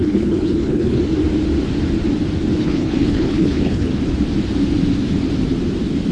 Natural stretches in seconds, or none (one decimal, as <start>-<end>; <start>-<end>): 1.0-2.6; 3.9-6.1